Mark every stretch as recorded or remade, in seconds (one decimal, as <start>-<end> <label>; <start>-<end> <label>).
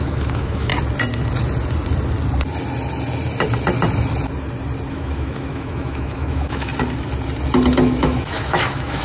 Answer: 0.0-0.7 remade; 0.7-4.9 recorded; 4.9-6.7 remade; 6.7-8.0 recorded; 8.0-9.0 remade